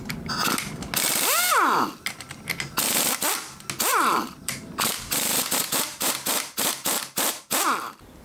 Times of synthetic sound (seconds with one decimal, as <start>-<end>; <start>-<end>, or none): 3.9-6.3